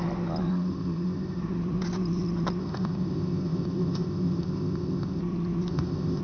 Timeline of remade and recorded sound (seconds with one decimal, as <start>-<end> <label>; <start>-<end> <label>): 0.0-0.5 recorded; 0.5-1.4 remade; 1.4-2.6 recorded; 2.6-5.2 remade; 5.2-5.7 recorded; 5.7-6.2 remade

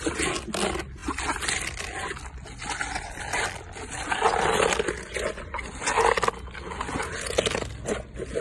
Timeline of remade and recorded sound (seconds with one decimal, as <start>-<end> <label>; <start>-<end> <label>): 0.0-8.4 recorded

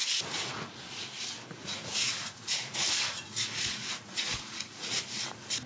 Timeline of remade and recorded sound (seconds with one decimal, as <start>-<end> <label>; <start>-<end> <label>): 0.0-0.5 remade; 0.5-1.6 recorded; 1.6-5.0 remade; 5.0-5.7 recorded

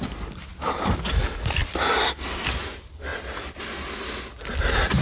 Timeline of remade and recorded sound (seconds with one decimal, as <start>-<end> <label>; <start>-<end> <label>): 0.0-1.6 recorded; 1.6-2.3 remade; 2.3-5.0 recorded

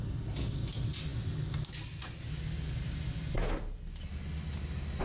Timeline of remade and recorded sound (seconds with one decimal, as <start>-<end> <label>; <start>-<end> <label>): 0.0-5.0 recorded

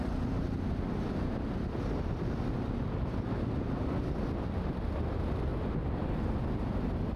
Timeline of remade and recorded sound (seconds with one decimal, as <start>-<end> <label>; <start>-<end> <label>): 0.0-7.2 recorded

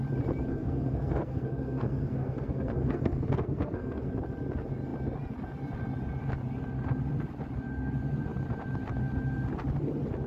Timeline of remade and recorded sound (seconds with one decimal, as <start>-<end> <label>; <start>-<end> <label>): 0.0-0.5 recorded; 0.5-4.1 remade; 4.1-10.3 recorded